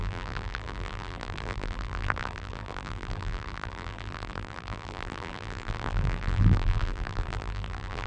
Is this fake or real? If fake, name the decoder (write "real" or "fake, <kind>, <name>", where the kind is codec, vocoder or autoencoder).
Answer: fake, vocoder, BigVGAN v2